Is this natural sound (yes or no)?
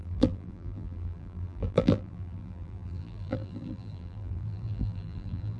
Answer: no